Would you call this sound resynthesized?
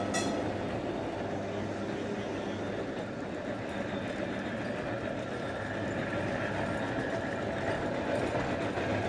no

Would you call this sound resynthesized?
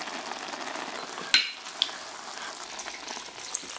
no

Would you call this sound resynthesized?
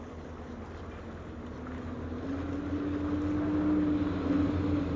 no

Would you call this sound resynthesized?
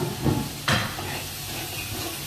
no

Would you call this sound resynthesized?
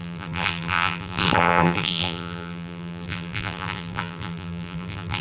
yes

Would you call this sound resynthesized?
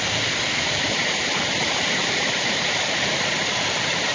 no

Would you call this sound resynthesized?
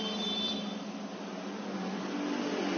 yes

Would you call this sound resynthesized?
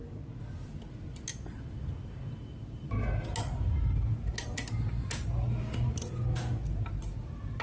no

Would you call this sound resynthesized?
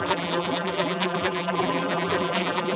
yes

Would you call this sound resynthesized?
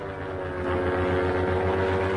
no